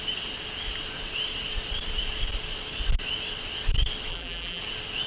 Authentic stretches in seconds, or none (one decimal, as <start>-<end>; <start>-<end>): 0.0-4.1; 4.6-5.1